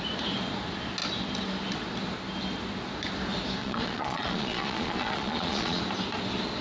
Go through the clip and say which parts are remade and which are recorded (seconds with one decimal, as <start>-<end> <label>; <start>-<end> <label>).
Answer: 0.0-3.6 recorded; 3.6-5.8 remade; 5.8-6.6 recorded